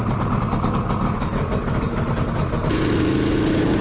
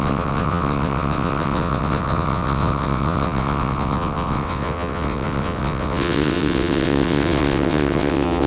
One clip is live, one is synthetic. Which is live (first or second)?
first